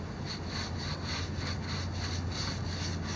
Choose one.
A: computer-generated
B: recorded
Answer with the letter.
B